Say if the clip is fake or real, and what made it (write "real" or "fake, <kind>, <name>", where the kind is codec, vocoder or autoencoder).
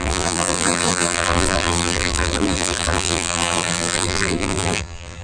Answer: fake, vocoder, BigVGAN v2